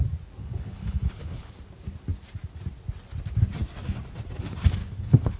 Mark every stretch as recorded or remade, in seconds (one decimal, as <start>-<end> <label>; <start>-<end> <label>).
0.0-0.4 recorded; 0.4-1.5 remade; 1.5-4.8 recorded; 4.8-5.4 remade